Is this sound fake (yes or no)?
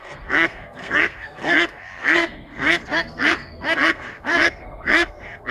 yes